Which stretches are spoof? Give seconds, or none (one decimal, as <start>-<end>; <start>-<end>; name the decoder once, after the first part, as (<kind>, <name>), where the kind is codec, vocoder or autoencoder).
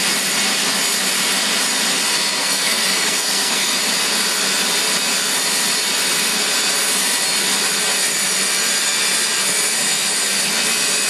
2.4-3.8 (codec, SNAC)